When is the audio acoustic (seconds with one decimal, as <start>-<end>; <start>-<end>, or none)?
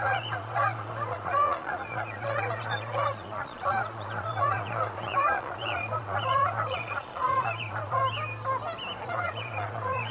8.0-9.0